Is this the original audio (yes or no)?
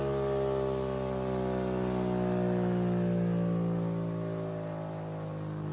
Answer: yes